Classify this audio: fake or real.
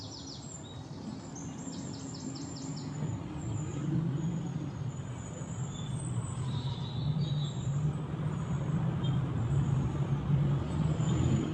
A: real